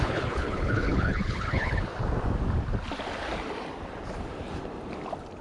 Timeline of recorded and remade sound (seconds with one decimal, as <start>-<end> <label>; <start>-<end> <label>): 0.0-1.9 remade; 1.9-5.4 recorded